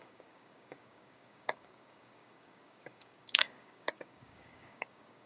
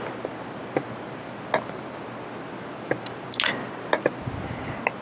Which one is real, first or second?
second